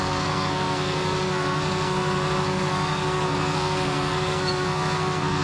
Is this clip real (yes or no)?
no